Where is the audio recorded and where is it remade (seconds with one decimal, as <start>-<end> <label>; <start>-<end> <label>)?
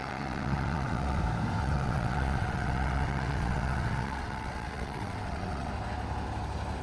0.0-1.2 remade; 1.2-1.6 recorded; 1.6-5.7 remade; 5.7-6.8 recorded